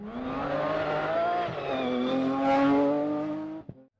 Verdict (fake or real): real